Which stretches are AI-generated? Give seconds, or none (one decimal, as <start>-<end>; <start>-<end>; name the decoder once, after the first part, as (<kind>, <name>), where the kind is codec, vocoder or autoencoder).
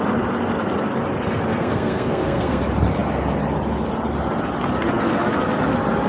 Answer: 1.5-2.6 (codec, SNAC)